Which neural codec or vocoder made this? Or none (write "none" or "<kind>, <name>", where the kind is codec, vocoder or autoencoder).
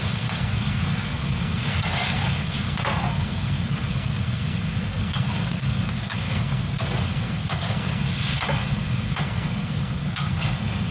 codec, SNAC